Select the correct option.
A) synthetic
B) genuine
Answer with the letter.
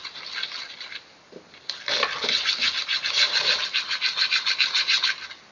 B